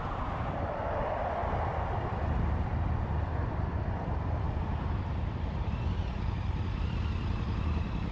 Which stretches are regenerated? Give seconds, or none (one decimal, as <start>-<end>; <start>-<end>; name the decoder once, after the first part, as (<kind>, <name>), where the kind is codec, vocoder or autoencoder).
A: 0.0-1.4 (vocoder, BigVGAN v2); 2.2-8.1